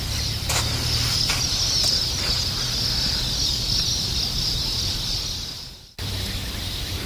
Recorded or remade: recorded